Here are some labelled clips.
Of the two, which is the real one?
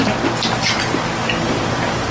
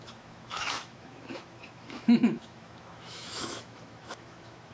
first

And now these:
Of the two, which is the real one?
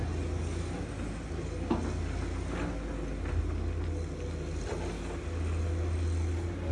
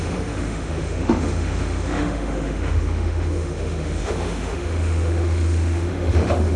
first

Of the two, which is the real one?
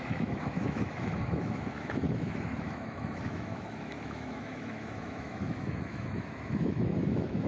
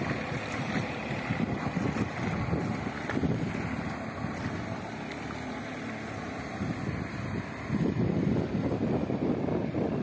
second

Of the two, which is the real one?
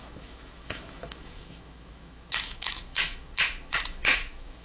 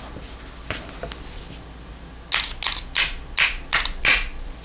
second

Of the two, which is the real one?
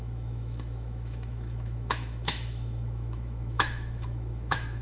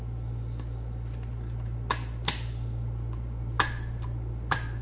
second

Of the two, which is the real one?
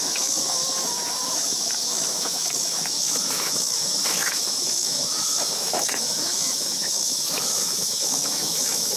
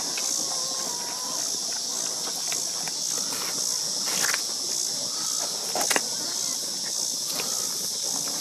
second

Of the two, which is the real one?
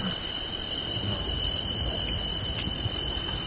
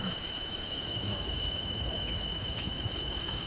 first